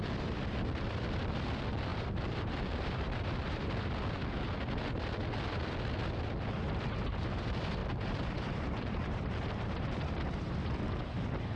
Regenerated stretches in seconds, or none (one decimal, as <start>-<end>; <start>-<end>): 1.9-3.9; 7.8-10.0